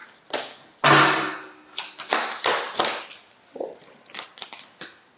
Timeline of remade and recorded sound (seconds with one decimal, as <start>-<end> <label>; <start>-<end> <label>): 0.0-5.2 recorded